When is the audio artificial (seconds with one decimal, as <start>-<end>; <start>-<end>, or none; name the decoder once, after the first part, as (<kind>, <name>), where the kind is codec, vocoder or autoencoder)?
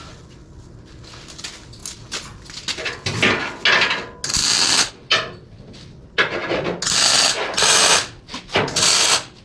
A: none